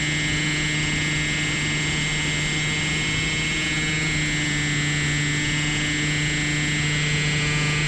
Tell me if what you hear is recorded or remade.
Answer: recorded